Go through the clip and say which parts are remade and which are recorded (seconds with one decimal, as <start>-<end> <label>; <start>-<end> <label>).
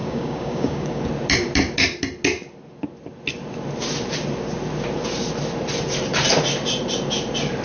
0.0-1.0 remade; 1.0-7.6 recorded